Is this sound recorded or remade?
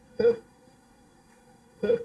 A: remade